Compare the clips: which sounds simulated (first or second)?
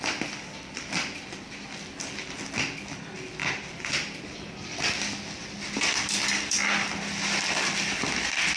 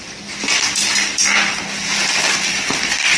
first